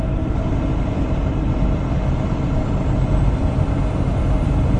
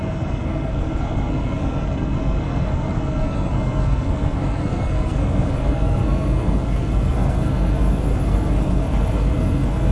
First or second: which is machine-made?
second